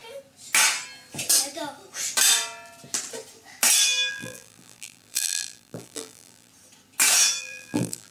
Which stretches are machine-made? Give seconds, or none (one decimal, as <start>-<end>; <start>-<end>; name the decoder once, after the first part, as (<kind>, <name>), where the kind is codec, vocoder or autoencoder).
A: 4.1-6.5 (vocoder, BigVGAN v2); 7.4-8.1

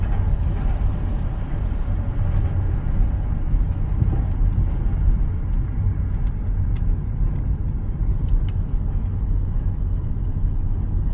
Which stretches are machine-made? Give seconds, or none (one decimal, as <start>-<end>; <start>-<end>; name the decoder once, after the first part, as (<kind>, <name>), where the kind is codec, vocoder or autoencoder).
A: none

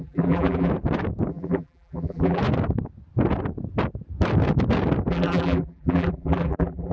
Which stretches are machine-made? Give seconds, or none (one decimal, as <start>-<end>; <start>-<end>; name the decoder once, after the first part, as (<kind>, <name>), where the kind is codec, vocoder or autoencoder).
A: 0.0-0.7 (vocoder, BigVGAN v2); 1.3-2.4; 5.1-6.9

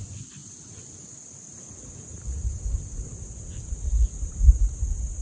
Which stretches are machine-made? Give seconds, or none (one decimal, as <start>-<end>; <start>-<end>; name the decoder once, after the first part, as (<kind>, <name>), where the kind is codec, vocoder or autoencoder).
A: none

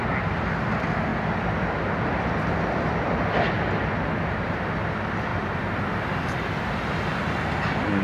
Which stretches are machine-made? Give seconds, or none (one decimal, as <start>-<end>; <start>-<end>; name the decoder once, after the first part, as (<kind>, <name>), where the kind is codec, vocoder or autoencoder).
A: 5.3-7.2 (vocoder, BigVGAN v2)

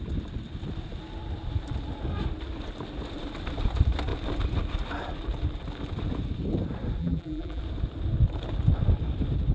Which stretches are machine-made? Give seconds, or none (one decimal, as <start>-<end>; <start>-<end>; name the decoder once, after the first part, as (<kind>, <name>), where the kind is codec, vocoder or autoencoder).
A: 7.0-7.6 (vocoder, BigVGAN v2)